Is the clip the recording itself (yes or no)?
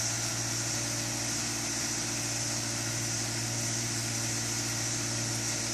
yes